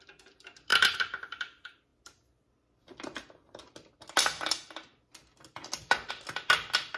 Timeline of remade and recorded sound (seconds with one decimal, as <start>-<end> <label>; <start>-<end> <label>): 0.0-7.0 recorded